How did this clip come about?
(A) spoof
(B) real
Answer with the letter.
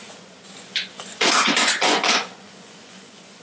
A